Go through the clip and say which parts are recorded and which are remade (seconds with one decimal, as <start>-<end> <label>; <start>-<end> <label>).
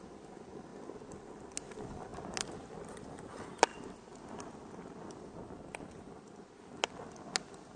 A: 0.0-7.8 recorded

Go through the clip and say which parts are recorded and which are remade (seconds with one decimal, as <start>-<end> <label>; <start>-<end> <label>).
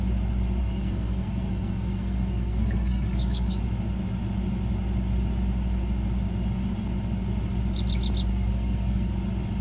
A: 0.0-0.6 recorded; 0.6-3.6 remade; 3.6-8.3 recorded; 8.3-9.1 remade; 9.1-9.6 recorded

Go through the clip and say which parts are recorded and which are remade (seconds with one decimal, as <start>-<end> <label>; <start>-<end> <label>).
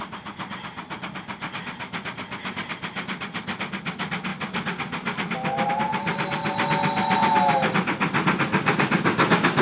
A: 0.0-9.6 recorded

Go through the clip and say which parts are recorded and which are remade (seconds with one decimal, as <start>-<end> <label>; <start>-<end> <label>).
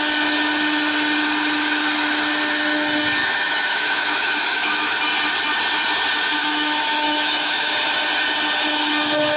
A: 0.0-3.2 recorded; 3.2-5.0 remade; 5.0-6.4 recorded; 6.4-7.7 remade; 7.7-9.4 recorded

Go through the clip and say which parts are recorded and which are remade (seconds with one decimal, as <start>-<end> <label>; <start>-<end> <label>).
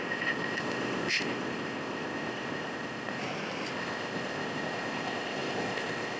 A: 0.0-3.2 remade; 3.2-3.7 recorded; 3.7-6.2 remade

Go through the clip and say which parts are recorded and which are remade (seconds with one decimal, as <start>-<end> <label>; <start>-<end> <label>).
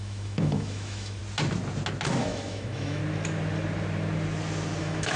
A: 0.0-1.2 remade; 1.2-2.2 recorded; 2.2-3.0 remade; 3.0-4.8 recorded; 4.8-5.2 remade